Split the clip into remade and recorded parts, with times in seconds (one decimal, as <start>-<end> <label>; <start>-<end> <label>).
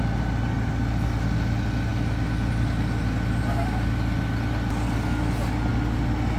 0.0-6.4 recorded